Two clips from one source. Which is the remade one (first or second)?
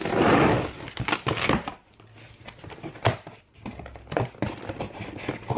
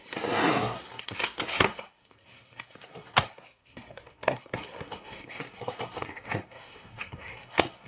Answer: second